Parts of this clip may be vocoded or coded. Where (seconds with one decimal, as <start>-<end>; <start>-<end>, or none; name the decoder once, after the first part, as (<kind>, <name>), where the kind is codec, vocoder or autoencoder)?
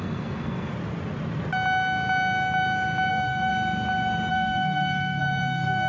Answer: 0.0-0.7 (codec, SNAC); 3.1-3.5; 4.3-5.9